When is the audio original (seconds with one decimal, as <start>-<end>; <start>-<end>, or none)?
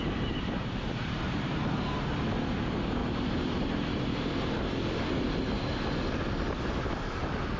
2.1-3.0; 5.9-7.6